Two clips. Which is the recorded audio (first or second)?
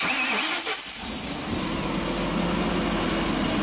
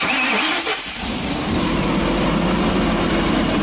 first